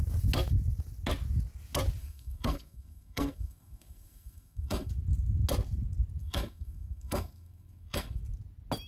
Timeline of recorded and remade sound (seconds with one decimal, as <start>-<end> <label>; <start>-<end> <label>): 0.0-2.0 recorded; 2.0-4.9 remade; 4.9-6.2 recorded; 6.2-8.2 remade; 8.2-8.9 recorded